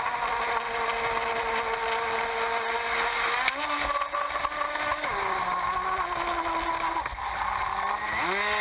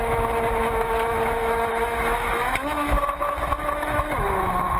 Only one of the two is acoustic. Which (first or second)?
first